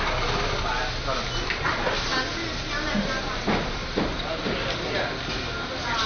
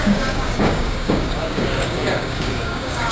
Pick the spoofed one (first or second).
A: second